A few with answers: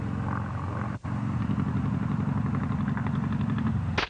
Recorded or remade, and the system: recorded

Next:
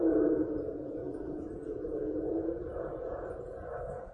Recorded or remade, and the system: remade, vocoder, Vocos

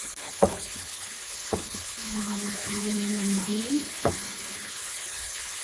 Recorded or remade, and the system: remade, codec, HILCodec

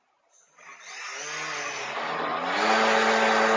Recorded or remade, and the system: recorded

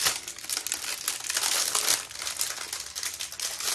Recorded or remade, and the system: recorded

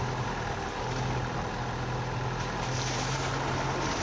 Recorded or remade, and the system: recorded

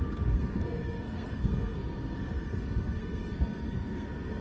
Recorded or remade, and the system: remade, codec, SNAC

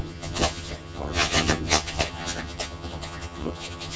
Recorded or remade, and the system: remade, vocoder, HiFi-GAN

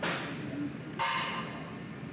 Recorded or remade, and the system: recorded